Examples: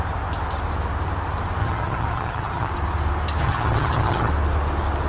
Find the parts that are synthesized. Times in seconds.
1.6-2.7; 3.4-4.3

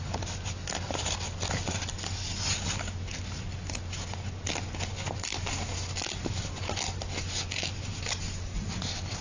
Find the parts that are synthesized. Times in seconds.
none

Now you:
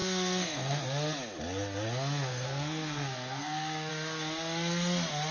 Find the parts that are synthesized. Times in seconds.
0.0-0.8; 2.3-3.9

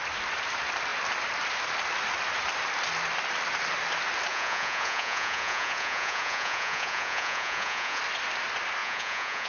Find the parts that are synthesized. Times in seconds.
4.3-8.0; 8.8-9.5

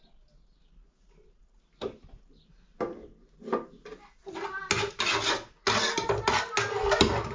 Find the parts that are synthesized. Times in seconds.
none

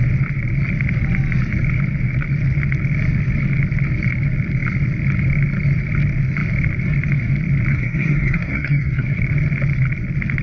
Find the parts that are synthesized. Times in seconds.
7.7-9.2

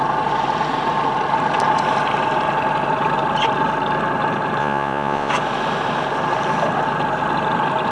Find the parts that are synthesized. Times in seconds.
4.6-5.3